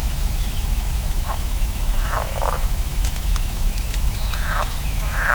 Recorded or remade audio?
remade